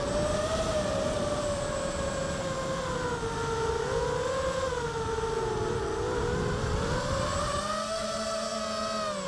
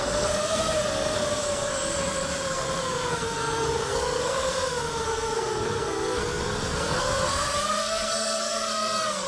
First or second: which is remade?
second